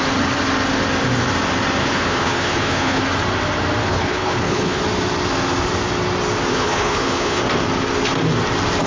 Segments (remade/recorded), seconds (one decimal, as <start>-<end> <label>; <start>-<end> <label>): 0.0-1.8 recorded; 1.8-3.0 remade; 3.0-3.8 recorded; 3.8-4.8 remade; 4.8-6.5 recorded; 6.5-7.4 remade; 7.4-8.9 recorded